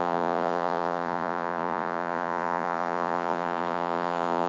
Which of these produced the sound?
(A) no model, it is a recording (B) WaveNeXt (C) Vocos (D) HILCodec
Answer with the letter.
C